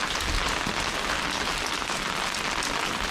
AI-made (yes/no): no